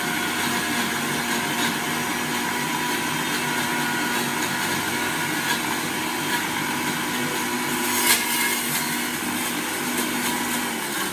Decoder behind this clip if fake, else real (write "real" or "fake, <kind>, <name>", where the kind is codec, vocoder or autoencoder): real